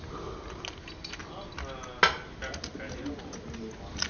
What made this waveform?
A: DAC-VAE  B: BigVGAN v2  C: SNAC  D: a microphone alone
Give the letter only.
D